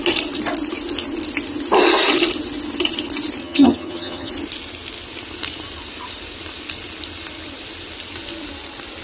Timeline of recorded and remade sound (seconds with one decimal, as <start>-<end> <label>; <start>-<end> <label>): 0.0-3.4 recorded; 3.4-4.3 remade; 4.3-9.0 recorded